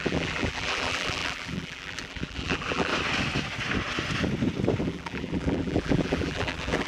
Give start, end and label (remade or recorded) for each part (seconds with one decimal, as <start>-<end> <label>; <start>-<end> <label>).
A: 0.0-2.9 remade; 2.9-4.8 recorded; 4.8-6.9 remade